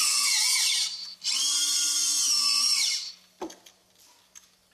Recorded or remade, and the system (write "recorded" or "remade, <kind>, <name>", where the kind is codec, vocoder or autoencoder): recorded